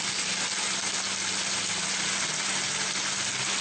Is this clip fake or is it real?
real